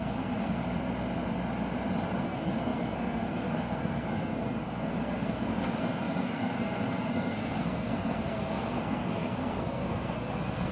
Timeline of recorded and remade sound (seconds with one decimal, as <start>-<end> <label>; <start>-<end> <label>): 0.0-0.6 remade; 0.6-2.2 recorded; 2.2-10.7 remade